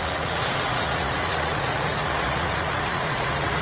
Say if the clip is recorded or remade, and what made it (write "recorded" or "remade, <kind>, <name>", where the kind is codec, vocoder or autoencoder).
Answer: remade, vocoder, Vocos